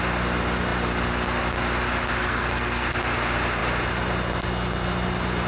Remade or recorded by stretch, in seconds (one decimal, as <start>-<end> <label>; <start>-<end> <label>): 0.0-2.2 recorded; 2.2-2.9 remade; 2.9-5.5 recorded